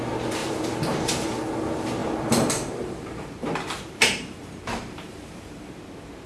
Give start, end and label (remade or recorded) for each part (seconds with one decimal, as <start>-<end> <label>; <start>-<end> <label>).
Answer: 0.0-0.4 recorded; 0.4-1.4 remade; 1.4-2.0 recorded; 2.0-5.8 remade; 5.8-6.3 recorded